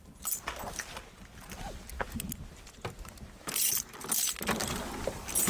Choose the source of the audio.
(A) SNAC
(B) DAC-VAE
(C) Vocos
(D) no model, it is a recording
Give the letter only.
D